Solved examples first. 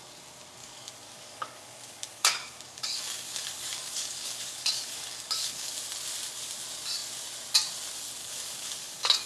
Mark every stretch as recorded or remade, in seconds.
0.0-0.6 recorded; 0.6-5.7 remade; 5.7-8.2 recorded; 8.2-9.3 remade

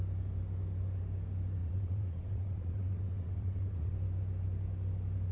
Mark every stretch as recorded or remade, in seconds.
0.0-1.6 recorded; 1.6-3.9 remade; 3.9-5.3 recorded

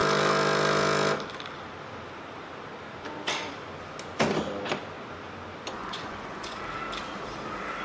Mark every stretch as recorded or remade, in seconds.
0.0-5.8 recorded; 5.8-6.6 remade; 6.6-7.8 recorded

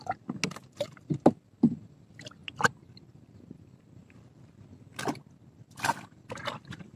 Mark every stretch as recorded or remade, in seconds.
0.0-7.0 recorded

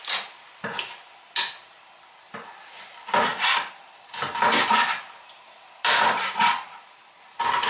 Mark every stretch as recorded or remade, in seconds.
0.0-7.7 recorded

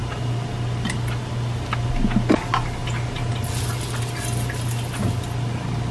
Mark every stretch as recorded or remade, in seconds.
0.0-5.9 recorded